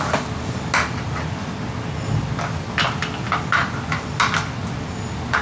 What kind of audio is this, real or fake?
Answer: real